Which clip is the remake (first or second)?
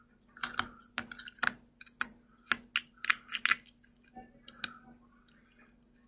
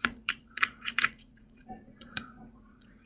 second